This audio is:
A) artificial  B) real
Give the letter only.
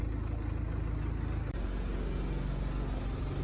B